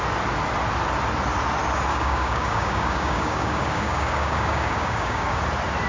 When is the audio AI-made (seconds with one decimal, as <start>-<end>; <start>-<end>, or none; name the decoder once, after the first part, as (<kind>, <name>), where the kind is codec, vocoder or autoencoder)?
1.9-5.4 (codec, DAC)